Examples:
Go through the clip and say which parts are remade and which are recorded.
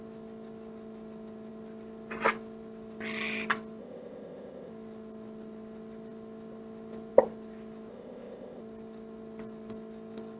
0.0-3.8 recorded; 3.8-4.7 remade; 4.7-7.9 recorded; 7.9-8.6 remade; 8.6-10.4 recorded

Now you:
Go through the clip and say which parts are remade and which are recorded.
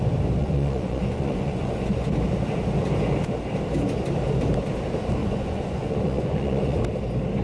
0.0-0.4 recorded; 0.4-2.1 remade; 2.1-5.2 recorded; 5.2-6.8 remade; 6.8-7.4 recorded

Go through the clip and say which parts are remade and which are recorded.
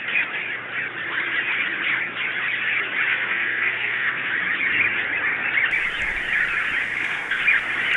0.0-3.1 recorded; 3.1-4.3 remade; 4.3-6.8 recorded; 6.8-7.4 remade; 7.4-8.0 recorded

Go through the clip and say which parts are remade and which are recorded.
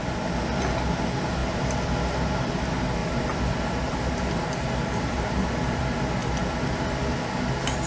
0.0-1.4 recorded; 1.4-2.5 remade; 2.5-3.0 recorded; 3.0-5.8 remade; 5.8-6.2 recorded; 6.2-7.2 remade; 7.2-7.9 recorded